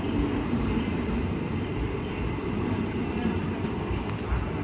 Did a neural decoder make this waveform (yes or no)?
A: no